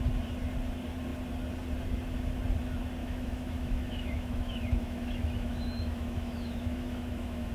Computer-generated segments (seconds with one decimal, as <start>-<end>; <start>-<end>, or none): 3.0-7.5